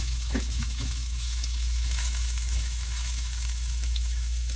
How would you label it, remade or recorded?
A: remade